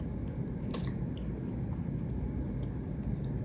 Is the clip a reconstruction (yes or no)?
no